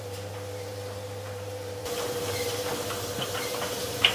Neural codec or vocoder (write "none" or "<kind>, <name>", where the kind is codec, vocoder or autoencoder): vocoder, BigVGAN v2